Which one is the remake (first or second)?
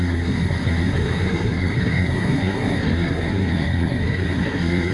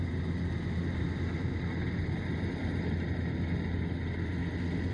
first